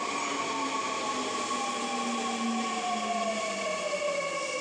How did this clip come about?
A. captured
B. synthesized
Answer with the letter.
A